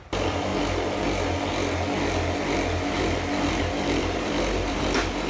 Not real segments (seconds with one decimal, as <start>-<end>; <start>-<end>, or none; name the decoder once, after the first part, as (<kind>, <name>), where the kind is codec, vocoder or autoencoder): 0.0-0.5 (vocoder, BigVGAN v2); 3.7-5.3